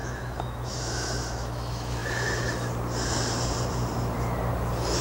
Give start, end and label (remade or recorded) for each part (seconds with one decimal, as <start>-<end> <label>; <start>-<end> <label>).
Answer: 0.0-2.0 remade; 2.0-5.0 recorded